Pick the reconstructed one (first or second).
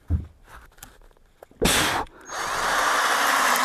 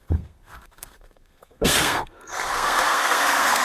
second